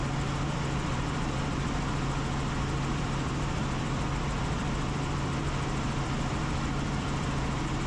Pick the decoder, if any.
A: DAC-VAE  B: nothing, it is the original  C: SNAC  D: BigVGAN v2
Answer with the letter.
D